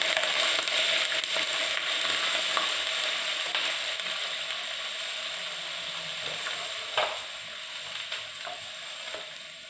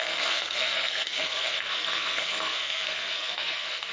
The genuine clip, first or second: first